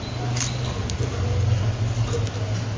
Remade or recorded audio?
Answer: recorded